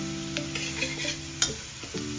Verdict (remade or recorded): recorded